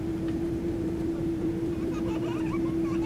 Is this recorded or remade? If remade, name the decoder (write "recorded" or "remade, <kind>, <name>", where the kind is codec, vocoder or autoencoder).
remade, vocoder, BigVGAN v2